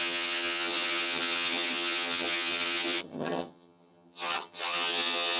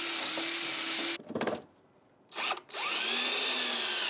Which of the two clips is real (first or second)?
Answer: second